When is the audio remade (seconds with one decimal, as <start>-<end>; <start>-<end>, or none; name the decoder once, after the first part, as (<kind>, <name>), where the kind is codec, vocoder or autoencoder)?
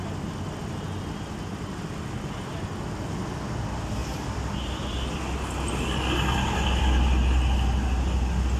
0.6-2.5 (vocoder, BigVGAN v2); 4.0-6.8